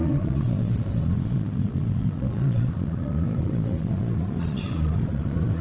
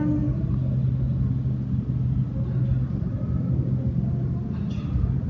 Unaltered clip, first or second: second